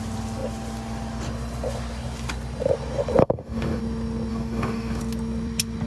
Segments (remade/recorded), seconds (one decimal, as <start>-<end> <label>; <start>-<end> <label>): 0.0-3.2 recorded; 3.2-3.8 remade; 3.8-4.3 recorded; 4.3-5.0 remade; 5.0-5.9 recorded

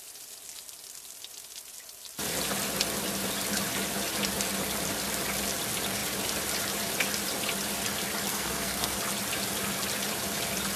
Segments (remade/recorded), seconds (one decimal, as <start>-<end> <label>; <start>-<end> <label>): 0.0-8.3 recorded; 8.3-9.0 remade; 9.0-10.8 recorded

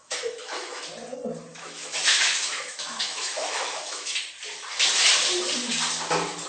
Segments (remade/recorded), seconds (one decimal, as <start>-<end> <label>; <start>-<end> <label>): 0.0-0.8 remade; 0.8-1.5 recorded; 1.5-4.2 remade; 4.2-6.5 recorded

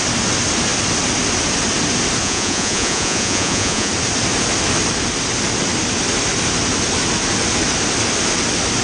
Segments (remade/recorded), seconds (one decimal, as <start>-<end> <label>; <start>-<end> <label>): 0.0-2.2 recorded; 2.2-3.9 remade; 3.9-8.8 recorded

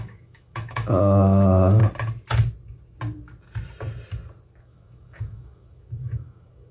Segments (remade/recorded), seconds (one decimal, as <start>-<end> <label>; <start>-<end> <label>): 0.0-1.8 remade; 1.8-4.6 recorded; 4.6-6.7 remade

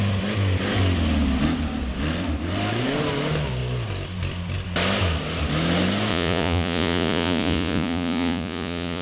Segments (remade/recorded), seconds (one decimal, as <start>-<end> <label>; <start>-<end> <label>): 0.0-6.1 recorded; 6.1-9.0 remade